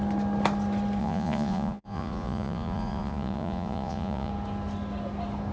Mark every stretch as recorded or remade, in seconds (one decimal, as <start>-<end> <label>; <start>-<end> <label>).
0.0-1.0 recorded; 1.0-4.3 remade; 4.3-5.5 recorded

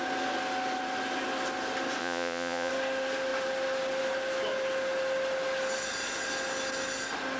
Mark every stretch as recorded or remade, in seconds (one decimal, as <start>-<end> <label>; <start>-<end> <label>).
0.0-2.0 recorded; 2.0-2.7 remade; 2.7-7.4 recorded

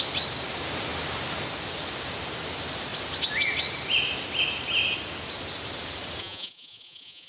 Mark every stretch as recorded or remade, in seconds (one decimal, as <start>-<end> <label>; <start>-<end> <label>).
0.0-6.2 recorded; 6.2-7.3 remade

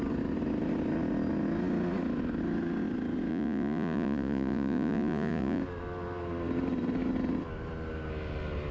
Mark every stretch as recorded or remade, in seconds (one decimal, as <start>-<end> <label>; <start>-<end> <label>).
0.0-3.3 recorded; 3.3-5.6 remade; 5.6-8.7 recorded

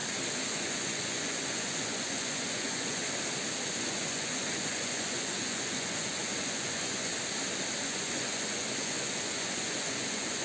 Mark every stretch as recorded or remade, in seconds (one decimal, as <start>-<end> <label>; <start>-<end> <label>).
0.0-0.5 recorded; 0.5-3.0 remade; 3.0-3.7 recorded; 3.7-7.1 remade; 7.1-7.8 recorded; 7.8-10.4 remade

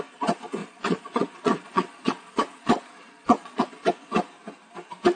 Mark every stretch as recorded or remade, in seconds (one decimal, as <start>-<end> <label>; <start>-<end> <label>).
0.0-0.6 recorded; 0.6-3.7 remade; 3.7-5.2 recorded

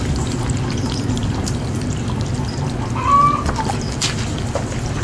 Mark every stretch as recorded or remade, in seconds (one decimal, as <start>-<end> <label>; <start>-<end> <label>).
0.0-5.0 recorded

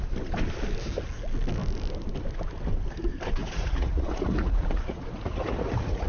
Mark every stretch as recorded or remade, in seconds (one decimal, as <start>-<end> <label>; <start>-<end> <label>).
0.0-3.4 recorded; 3.4-6.1 remade